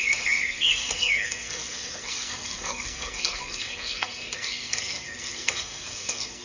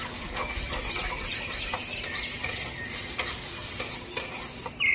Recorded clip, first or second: second